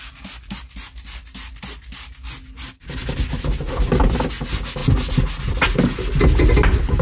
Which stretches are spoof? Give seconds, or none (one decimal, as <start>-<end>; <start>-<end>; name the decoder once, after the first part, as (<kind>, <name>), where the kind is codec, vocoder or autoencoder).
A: none